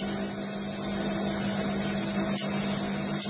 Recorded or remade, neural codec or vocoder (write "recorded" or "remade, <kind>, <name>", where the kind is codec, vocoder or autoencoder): recorded